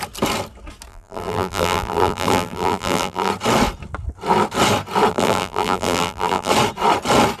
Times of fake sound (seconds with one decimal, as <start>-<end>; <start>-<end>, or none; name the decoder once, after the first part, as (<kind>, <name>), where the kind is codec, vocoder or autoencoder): 0.9-3.3 (vocoder, BigVGAN v2); 5.1-6.5